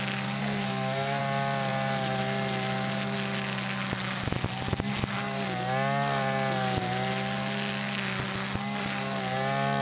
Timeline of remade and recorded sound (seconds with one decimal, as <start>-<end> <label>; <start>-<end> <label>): 0.0-0.4 recorded; 0.4-1.2 remade; 1.2-9.8 recorded